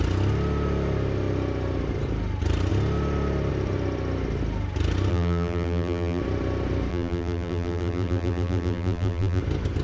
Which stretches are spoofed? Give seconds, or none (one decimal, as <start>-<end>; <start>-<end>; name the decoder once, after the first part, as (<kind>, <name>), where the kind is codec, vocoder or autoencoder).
5.1-6.2 (vocoder, BigVGAN v2); 6.9-9.4